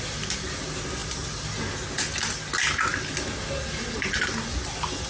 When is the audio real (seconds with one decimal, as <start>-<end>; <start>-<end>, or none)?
0.0-5.1